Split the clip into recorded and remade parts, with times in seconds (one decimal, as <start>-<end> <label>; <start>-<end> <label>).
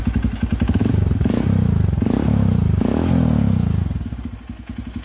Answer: 0.0-5.0 recorded